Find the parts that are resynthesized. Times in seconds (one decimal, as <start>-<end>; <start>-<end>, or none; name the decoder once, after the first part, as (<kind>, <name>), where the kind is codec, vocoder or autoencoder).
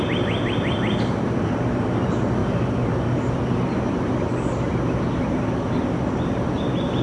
none